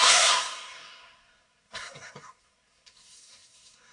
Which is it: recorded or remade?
remade